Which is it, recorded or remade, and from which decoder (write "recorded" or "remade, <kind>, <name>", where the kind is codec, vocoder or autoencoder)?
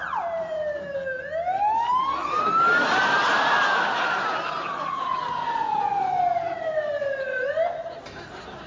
recorded